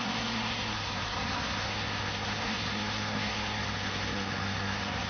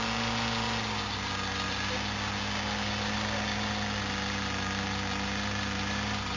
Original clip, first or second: second